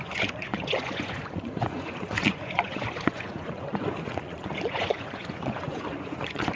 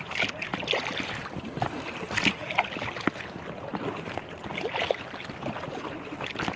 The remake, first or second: first